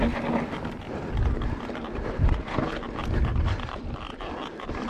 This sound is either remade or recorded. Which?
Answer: remade